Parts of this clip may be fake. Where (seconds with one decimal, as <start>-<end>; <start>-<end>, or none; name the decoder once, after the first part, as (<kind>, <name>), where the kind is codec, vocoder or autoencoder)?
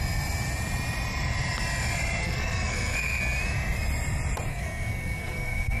2.2-3.2 (codec, SNAC); 4.5-5.8